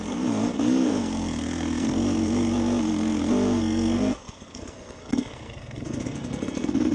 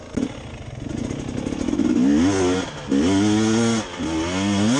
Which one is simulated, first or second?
first